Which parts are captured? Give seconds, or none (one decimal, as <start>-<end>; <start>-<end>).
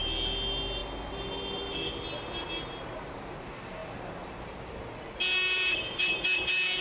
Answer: 0.0-5.3